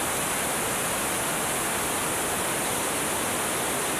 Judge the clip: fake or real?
real